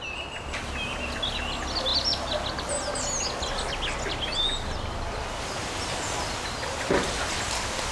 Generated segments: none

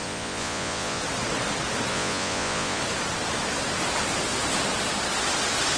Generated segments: 0.0-1.0 (vocoder, Vocos); 1.9-2.8

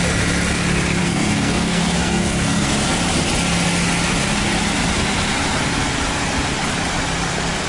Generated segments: 1.0-2.7 (codec, SNAC)